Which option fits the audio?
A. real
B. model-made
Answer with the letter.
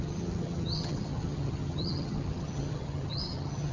B